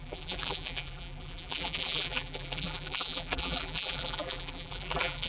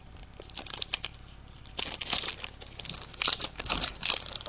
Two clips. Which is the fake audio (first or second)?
first